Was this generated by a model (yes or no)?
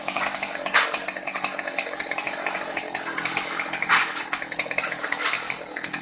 yes